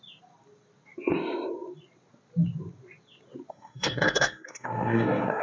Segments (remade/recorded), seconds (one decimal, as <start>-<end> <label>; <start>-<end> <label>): 0.0-3.5 recorded; 3.5-5.4 remade